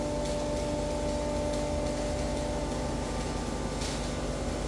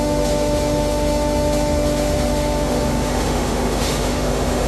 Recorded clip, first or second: first